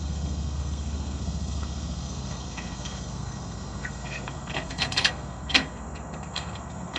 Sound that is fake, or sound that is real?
fake